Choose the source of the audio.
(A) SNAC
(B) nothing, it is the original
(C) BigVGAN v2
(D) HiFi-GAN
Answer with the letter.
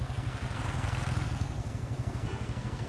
A